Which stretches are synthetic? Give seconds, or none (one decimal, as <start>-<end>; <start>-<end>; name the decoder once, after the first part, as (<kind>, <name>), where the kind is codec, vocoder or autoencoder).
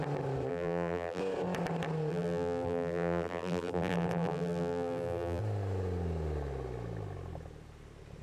0.5-1.2 (vocoder, BigVGAN v2); 2.1-5.4